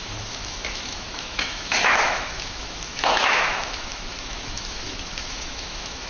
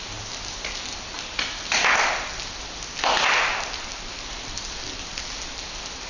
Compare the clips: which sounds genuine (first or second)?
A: second